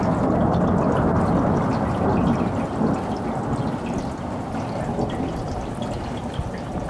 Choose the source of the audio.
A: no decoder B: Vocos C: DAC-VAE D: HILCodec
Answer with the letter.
A